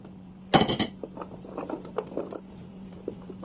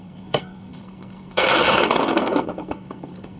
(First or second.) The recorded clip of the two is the first